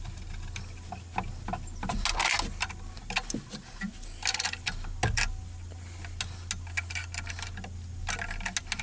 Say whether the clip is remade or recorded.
recorded